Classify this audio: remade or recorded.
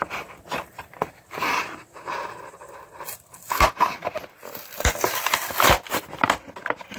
recorded